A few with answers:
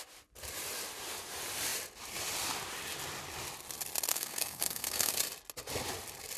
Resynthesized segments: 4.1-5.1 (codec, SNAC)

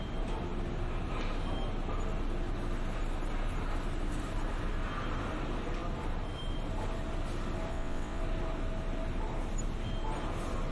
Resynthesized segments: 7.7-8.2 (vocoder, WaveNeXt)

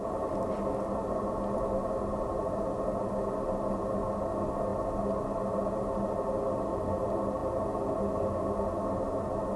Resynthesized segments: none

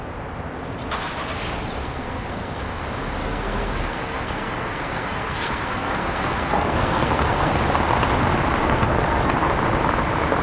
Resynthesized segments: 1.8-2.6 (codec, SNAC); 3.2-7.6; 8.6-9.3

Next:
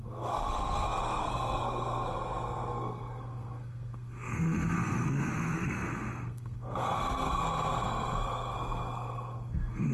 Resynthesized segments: 0.0-9.9 (codec, SNAC)